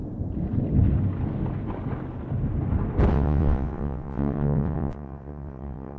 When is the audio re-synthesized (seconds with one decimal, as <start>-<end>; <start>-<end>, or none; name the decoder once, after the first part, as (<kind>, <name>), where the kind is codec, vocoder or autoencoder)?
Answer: 3.1-6.0 (vocoder, WaveNeXt)